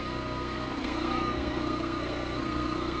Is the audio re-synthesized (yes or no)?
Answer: yes